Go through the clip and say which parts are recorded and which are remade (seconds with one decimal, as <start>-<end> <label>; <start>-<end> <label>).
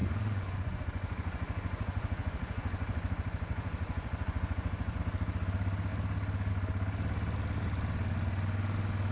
0.0-5.0 remade; 5.0-9.1 recorded